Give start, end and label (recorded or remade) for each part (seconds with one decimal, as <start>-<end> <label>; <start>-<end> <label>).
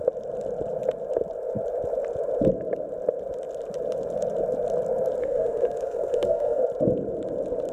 0.0-5.2 recorded; 5.2-6.6 remade; 6.6-7.7 recorded